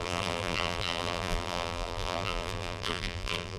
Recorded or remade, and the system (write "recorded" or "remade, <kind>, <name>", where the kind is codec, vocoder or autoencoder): remade, vocoder, BigVGAN v2